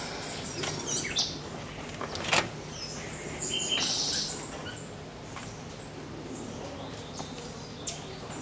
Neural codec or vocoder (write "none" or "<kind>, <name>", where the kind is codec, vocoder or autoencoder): none